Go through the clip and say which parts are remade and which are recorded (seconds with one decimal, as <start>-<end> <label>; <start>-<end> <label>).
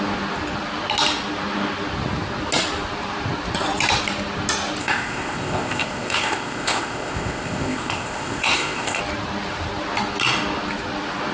0.0-4.8 recorded; 4.8-9.0 remade; 9.0-11.3 recorded